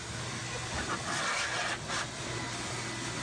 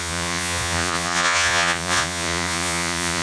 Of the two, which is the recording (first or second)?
first